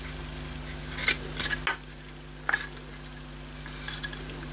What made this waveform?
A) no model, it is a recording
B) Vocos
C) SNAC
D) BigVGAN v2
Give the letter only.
A